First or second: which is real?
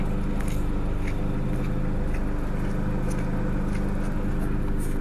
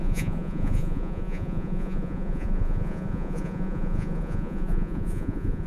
first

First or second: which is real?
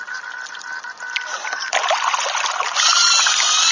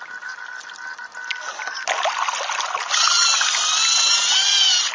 second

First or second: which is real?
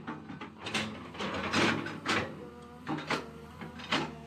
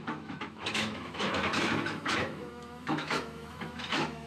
first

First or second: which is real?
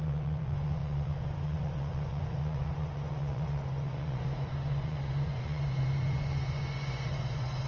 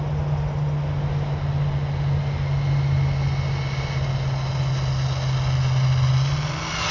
second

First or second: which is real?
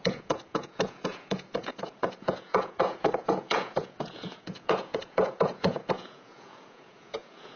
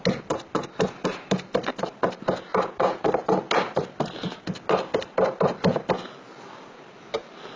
second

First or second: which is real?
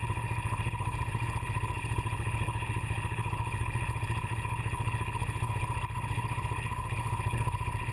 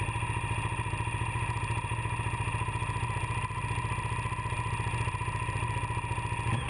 second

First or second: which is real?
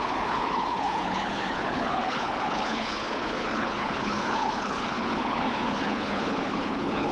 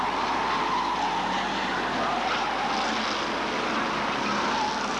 second